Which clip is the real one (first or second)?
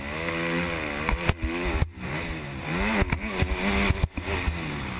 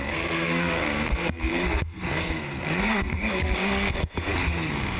first